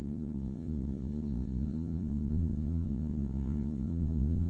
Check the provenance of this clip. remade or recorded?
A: remade